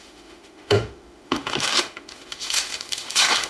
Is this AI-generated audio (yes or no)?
yes